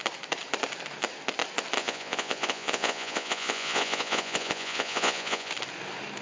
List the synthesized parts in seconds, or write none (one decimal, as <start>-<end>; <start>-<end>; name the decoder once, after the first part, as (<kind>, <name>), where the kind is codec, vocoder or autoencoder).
1.8-5.5 (vocoder, Vocos)